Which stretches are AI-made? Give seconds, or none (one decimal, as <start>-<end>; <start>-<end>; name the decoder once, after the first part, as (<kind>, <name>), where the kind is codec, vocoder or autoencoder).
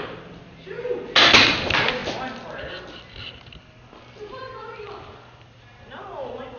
none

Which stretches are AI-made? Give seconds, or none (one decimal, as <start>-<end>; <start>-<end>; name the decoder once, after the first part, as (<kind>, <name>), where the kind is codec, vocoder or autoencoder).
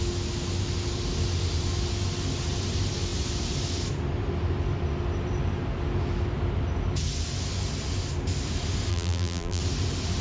8.9-9.6 (vocoder, BigVGAN v2)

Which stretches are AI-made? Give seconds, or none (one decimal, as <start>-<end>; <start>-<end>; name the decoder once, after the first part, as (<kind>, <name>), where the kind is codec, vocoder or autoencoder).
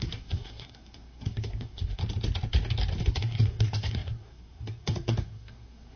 0.0-2.0 (codec, SNAC); 3.0-6.0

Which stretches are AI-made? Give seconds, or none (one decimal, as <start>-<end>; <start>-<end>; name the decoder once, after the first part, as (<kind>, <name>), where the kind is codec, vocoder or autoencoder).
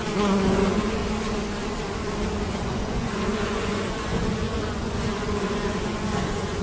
0.0-1.0 (vocoder, Vocos); 2.5-6.6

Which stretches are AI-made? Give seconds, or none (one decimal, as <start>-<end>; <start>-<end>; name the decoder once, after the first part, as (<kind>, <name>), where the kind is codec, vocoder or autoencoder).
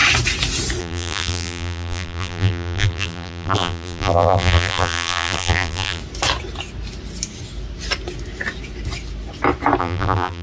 0.8-6.0 (vocoder, BigVGAN v2); 9.8-10.4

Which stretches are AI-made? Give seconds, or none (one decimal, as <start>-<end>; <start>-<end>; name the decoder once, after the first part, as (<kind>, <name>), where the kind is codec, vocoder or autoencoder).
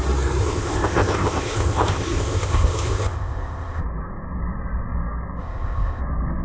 0.4-3.8 (codec, ZipCodec); 5.4-6.0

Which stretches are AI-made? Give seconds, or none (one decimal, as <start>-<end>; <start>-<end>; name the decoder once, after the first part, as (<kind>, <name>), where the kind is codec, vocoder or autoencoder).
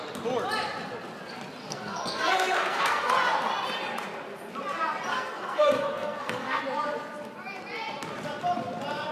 1.6-3.1 (codec, SNAC); 5.1-6.6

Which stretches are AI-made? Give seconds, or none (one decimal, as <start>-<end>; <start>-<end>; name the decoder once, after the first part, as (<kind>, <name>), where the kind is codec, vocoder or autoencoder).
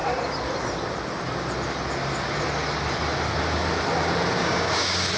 4.4-5.2 (codec, DAC)